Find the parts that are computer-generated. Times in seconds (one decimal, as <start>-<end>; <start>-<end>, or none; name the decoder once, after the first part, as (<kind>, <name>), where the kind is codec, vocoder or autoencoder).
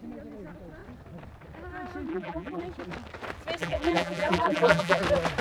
2.1-2.6 (vocoder, BigVGAN v2); 3.6-5.0